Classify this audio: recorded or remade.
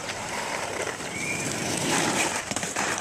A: remade